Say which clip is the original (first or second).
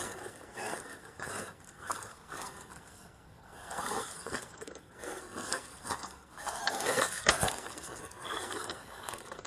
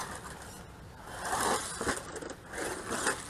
second